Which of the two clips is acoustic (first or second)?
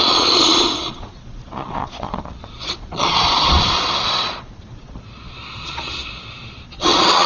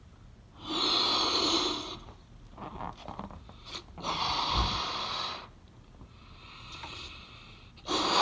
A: second